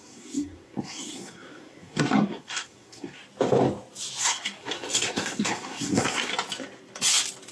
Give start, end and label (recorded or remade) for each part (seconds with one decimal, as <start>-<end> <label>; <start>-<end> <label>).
0.0-3.2 remade; 3.2-4.2 recorded; 4.2-6.3 remade; 6.3-7.5 recorded